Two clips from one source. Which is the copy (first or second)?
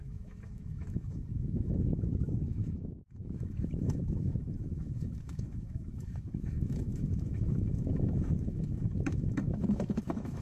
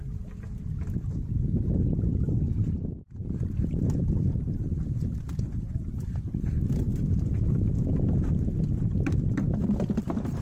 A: first